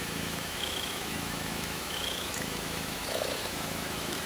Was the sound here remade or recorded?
remade